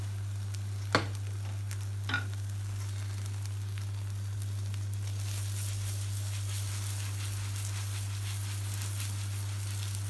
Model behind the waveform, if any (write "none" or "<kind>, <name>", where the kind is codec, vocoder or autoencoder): none